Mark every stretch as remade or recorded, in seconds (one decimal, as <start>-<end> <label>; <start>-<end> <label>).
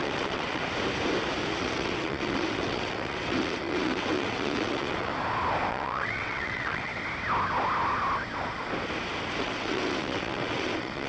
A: 0.0-0.6 remade; 0.6-1.6 recorded; 1.6-5.1 remade; 5.1-5.7 recorded; 5.7-6.9 remade; 6.9-9.4 recorded; 9.4-11.1 remade